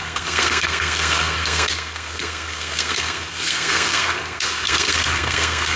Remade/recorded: remade